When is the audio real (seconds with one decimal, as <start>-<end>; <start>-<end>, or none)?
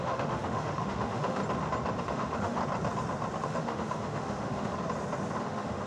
1.4-2.0; 2.6-3.4; 4.7-5.4